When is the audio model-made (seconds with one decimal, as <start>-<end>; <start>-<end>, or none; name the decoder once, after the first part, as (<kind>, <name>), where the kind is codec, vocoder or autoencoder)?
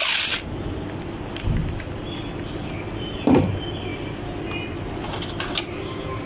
none